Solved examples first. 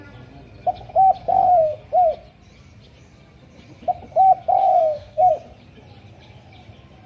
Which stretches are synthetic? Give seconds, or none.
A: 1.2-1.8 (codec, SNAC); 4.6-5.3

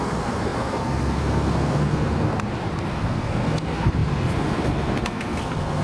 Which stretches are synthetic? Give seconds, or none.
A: 0.0-2.3 (codec, SNAC); 2.9-5.8

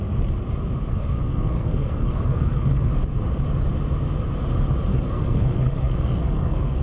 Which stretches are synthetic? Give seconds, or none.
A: 0.9-2.9 (codec, SNAC); 4.9-6.8

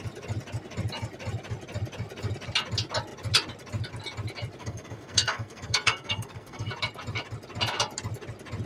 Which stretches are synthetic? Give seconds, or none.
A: 4.6-6.7 (codec, SNAC)

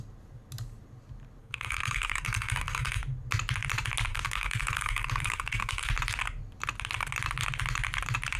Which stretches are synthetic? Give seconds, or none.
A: 1.4-3.0 (codec, SNAC); 4.1-5.9

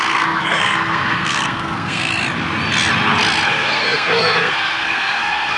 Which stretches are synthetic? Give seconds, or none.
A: 0.0-2.1 (codec, SNAC); 3.5-5.6

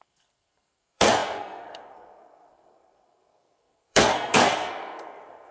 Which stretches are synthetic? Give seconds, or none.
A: 0.0-5.5 (codec, SNAC)

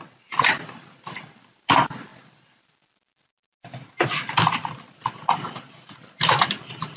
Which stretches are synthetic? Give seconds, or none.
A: none